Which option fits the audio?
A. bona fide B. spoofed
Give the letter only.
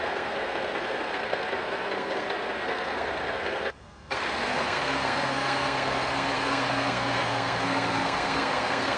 B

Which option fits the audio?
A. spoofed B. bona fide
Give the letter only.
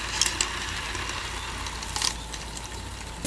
B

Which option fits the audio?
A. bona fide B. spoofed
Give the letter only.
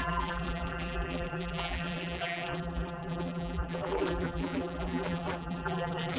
B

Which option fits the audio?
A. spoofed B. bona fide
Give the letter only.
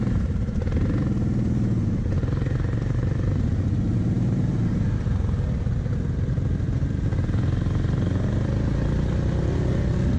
B